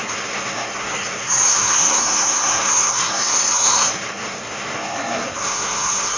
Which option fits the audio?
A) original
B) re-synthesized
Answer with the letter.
B